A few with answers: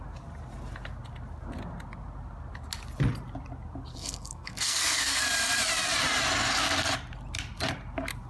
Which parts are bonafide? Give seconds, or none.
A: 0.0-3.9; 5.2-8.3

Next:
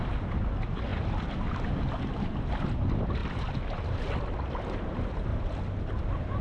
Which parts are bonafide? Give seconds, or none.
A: 0.0-6.4